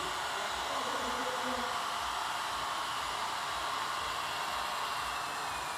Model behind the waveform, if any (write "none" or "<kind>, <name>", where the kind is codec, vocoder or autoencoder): none